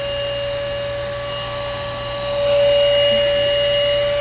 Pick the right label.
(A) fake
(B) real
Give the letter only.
B